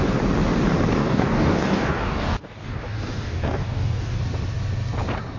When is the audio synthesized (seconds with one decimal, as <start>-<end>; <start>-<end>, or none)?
1.0-4.2